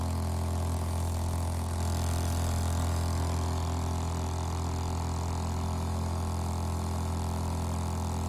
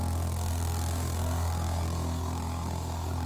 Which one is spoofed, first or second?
second